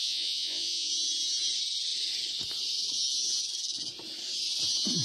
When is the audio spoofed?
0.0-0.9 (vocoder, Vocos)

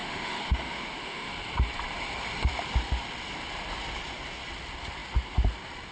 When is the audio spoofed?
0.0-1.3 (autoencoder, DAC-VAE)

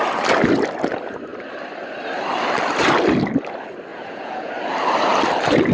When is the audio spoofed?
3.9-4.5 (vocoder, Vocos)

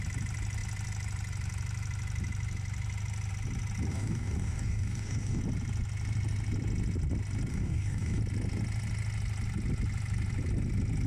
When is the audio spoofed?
3.9-5.4 (codec, DAC); 7.5-8.2

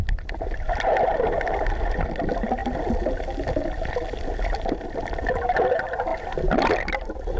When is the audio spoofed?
none

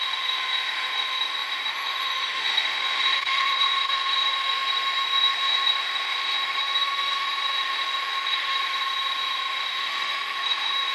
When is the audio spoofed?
0.0-8.6 (autoencoder, DAC-VAE); 9.4-10.9